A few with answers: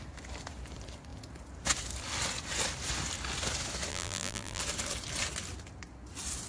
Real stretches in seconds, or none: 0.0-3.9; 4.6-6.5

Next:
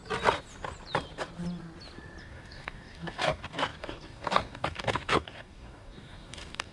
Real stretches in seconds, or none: 0.0-2.2

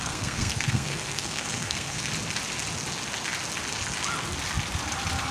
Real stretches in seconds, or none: 2.1-5.3

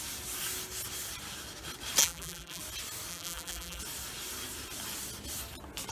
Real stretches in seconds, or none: 0.0-2.0; 2.6-3.1; 3.8-5.9